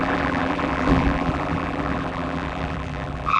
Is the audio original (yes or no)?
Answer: no